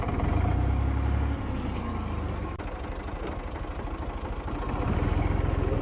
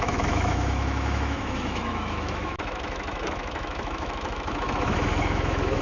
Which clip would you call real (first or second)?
first